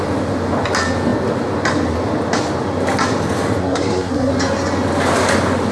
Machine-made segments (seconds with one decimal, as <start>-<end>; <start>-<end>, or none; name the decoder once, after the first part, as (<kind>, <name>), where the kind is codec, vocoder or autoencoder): 3.6-4.3 (codec, SNAC)